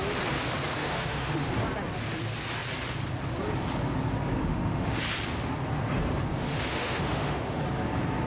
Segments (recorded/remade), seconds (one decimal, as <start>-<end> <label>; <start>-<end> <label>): 0.0-0.8 recorded; 0.8-1.5 remade; 1.5-4.4 recorded; 4.4-5.0 remade; 5.0-6.4 recorded; 6.4-7.6 remade; 7.6-8.3 recorded